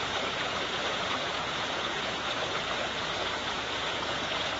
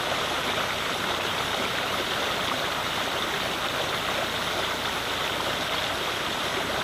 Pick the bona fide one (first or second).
second